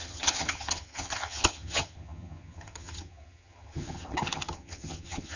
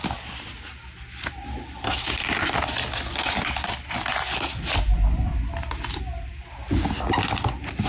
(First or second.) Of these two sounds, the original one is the second